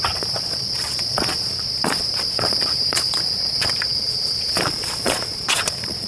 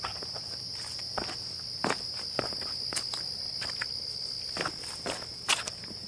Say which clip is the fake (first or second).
first